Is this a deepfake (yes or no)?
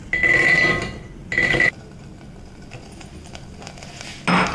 no